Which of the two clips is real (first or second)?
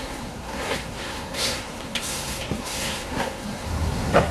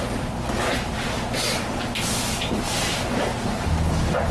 second